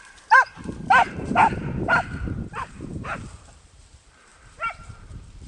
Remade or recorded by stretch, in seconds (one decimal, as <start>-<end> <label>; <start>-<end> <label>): 0.0-5.5 remade